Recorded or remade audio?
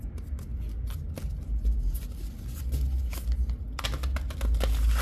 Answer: recorded